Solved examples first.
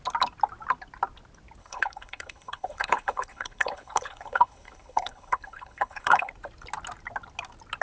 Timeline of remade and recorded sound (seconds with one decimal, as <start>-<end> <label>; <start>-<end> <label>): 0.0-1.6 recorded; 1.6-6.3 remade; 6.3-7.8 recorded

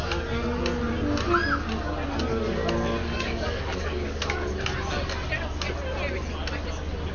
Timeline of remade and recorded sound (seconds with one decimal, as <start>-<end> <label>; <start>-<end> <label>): 0.0-3.0 recorded; 3.0-4.5 remade; 4.5-7.1 recorded

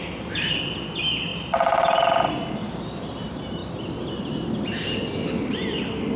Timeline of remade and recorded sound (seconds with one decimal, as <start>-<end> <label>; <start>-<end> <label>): 0.0-6.2 recorded

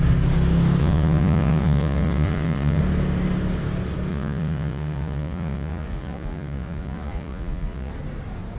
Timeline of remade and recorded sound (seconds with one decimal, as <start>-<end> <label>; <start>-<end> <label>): 0.0-0.8 recorded; 0.8-2.8 remade; 2.8-4.1 recorded; 4.1-7.9 remade; 7.9-8.6 recorded